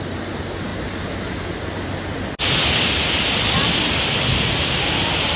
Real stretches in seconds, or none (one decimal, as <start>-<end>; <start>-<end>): 0.0-5.4

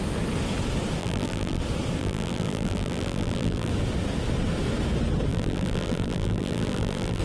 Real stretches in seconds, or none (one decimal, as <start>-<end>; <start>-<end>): 0.0-1.0; 1.6-2.0; 3.7-5.3

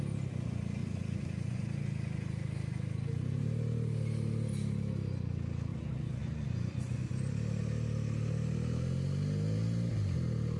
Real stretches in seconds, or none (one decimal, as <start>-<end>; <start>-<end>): 0.0-0.8; 1.6-5.7; 7.0-10.6

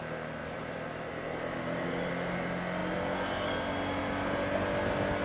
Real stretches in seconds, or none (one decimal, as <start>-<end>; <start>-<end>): 0.0-0.4; 2.1-5.2

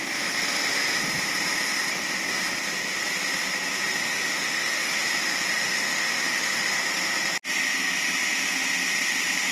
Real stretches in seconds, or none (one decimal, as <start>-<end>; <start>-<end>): 0.0-4.0; 5.1-5.5; 6.8-9.5

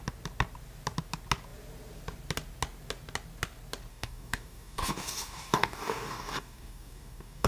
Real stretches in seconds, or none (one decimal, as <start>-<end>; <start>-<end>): 0.0-3.9